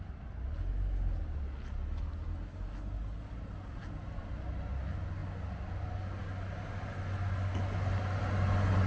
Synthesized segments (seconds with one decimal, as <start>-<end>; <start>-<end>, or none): none